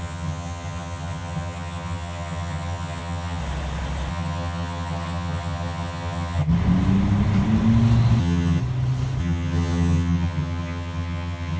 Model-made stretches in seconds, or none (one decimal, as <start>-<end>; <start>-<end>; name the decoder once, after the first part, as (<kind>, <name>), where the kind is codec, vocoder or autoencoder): 0.0-3.4 (vocoder, HiFi-GAN); 4.1-6.5; 8.2-8.6; 9.2-11.6

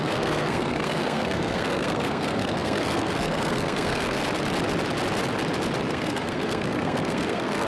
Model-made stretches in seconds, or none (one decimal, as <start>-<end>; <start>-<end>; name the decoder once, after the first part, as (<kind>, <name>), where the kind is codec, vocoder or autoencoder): 0.0-4.2 (codec, SNAC); 5.9-7.7

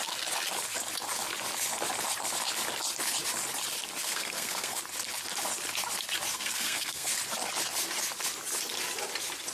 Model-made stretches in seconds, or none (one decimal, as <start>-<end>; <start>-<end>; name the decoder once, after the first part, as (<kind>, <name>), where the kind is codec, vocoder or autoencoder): 4.0-4.8 (codec, SNAC); 6.3-7.1

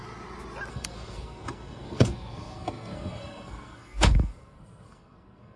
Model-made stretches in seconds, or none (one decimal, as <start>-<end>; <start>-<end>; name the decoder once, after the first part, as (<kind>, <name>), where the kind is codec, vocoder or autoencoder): 0.7-5.6 (codec, SNAC)

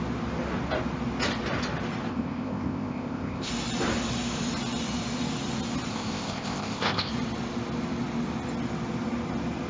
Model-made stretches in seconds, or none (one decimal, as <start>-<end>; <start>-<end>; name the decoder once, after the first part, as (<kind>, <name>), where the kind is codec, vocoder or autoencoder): 2.1-3.5 (codec, ZipCodec); 5.9-7.1

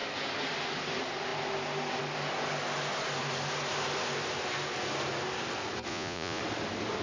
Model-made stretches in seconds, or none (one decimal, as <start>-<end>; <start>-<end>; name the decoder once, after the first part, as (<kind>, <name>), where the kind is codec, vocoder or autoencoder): 5.9-6.4 (vocoder, Vocos)

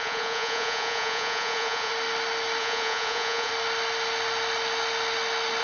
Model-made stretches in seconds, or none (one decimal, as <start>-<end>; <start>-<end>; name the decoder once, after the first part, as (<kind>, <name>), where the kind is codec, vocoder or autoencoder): 0.0-1.9 (vocoder, Vocos); 2.6-3.5

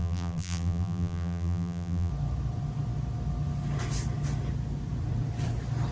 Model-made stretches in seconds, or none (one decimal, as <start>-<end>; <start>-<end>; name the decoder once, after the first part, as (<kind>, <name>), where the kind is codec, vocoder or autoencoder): 0.0-2.1 (vocoder, BigVGAN v2)